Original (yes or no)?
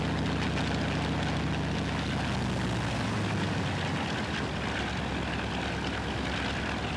yes